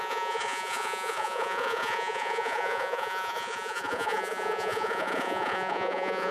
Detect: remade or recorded remade